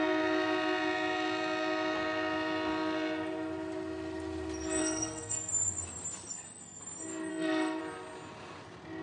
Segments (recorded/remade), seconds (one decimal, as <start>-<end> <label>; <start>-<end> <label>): 0.0-4.8 recorded; 4.8-5.5 remade; 5.5-6.3 recorded; 6.3-6.8 remade; 6.8-7.3 recorded; 7.3-7.8 remade; 7.8-9.0 recorded